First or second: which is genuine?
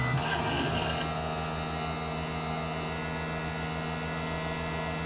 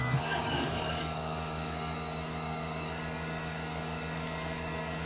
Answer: first